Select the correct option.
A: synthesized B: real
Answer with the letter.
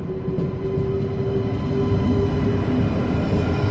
B